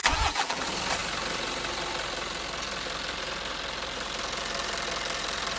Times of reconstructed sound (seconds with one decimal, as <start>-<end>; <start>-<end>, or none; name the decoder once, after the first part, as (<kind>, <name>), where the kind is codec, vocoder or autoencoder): 0.0-0.6 (vocoder, BigVGAN v2)